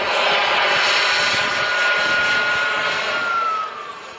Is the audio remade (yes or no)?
no